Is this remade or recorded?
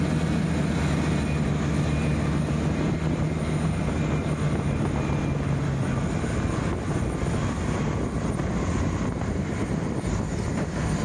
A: recorded